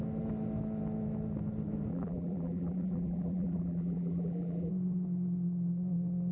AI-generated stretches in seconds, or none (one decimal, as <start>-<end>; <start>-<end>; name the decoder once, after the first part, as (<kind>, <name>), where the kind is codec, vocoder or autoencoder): 1.9-4.7 (vocoder, BigVGAN v2)